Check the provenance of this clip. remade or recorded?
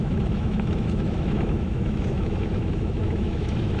remade